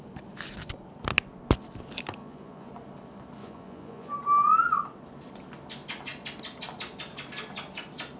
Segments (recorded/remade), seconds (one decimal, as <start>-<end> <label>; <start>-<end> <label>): 0.0-2.2 recorded; 2.2-2.7 remade; 2.7-3.4 recorded; 3.4-4.1 remade; 4.1-8.2 recorded